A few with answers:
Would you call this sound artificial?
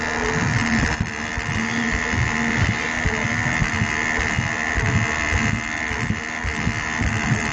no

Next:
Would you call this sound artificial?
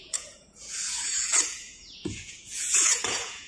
yes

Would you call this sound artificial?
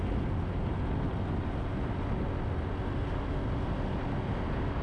no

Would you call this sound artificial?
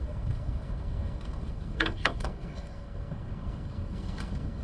yes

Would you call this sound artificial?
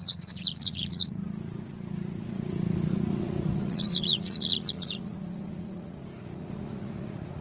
yes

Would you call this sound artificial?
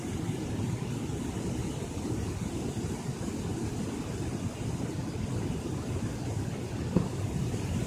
no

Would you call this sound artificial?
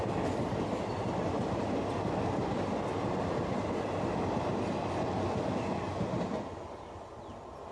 no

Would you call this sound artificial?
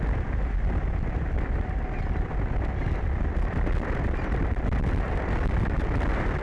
yes